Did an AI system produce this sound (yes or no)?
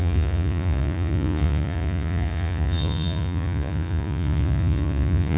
yes